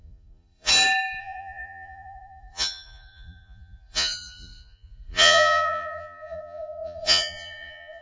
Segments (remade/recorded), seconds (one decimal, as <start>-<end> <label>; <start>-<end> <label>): 0.0-0.7 remade; 0.7-1.2 recorded; 1.2-8.0 remade